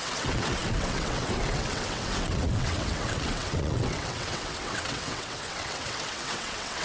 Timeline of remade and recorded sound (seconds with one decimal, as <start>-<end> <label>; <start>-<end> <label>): 0.0-6.8 remade